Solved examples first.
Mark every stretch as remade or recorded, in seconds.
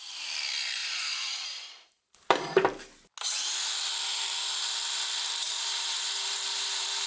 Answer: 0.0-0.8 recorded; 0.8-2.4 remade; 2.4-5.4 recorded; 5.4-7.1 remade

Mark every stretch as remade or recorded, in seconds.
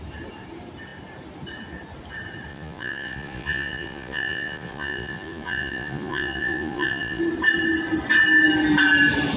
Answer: 0.0-2.5 recorded; 2.5-7.2 remade; 7.2-9.4 recorded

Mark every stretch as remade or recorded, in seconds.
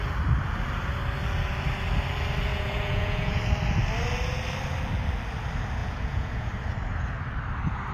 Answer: 0.0-2.5 recorded; 2.5-3.4 remade; 3.4-5.8 recorded; 5.8-6.5 remade; 6.5-7.9 recorded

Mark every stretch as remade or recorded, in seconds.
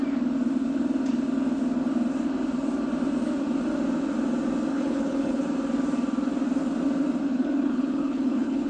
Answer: 0.0-4.7 recorded; 4.7-5.4 remade; 5.4-7.3 recorded; 7.3-8.7 remade